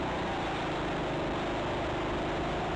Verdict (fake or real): real